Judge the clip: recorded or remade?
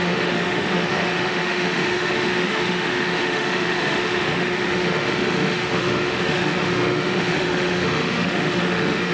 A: remade